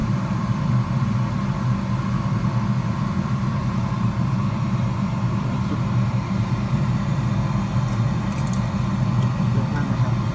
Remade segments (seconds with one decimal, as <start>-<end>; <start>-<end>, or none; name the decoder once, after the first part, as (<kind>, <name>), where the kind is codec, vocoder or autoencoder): 0.0-0.6 (vocoder, BigVGAN v2); 3.5-7.3